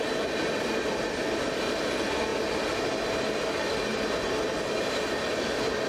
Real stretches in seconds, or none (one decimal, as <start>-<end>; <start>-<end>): 0.0-5.9